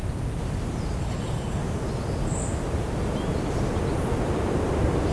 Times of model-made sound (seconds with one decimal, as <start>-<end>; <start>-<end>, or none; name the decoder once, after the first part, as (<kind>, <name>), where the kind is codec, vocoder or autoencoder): 1.0-1.6 (codec, HILCodec)